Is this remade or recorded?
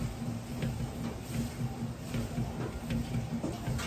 recorded